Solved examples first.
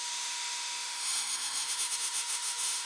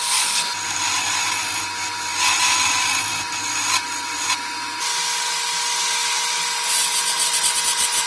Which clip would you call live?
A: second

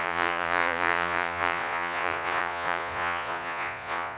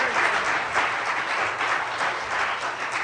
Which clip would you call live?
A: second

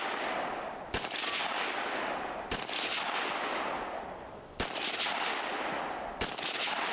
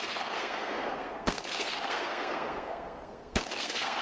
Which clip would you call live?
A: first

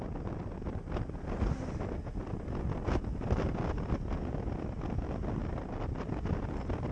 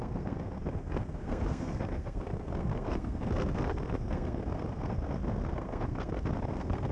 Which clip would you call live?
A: first